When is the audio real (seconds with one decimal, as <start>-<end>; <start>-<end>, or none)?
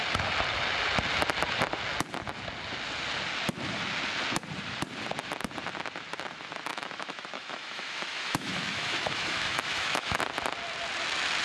0.0-6.7; 10.2-11.4